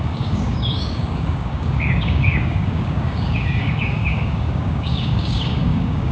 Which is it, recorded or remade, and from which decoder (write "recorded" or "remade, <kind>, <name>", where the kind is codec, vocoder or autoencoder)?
remade, codec, DAC